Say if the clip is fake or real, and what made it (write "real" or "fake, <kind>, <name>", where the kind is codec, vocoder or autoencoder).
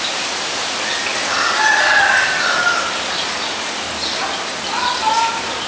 real